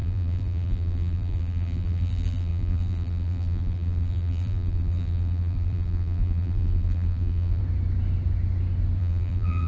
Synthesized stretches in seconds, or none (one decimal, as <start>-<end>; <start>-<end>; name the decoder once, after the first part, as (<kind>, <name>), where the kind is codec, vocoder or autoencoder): 0.0-7.6 (vocoder, BigVGAN v2); 9.0-9.7